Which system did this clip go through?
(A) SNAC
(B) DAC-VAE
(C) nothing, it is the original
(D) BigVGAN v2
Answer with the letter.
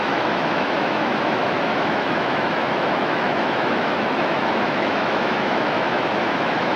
B